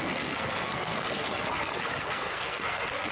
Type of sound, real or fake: fake